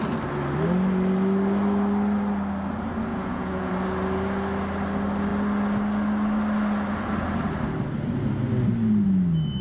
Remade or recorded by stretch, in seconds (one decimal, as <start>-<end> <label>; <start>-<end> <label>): 0.0-3.1 recorded; 3.1-3.7 remade; 3.7-9.6 recorded

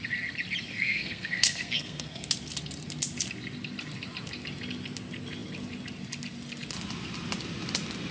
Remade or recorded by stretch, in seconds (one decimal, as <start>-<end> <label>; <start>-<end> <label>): 0.0-0.7 recorded; 0.7-2.3 remade; 2.3-8.1 recorded